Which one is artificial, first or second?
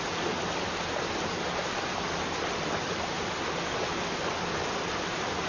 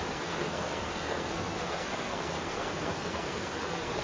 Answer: second